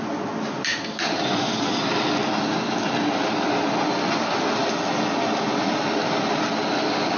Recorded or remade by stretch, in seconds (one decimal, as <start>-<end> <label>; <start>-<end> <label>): 0.0-7.2 recorded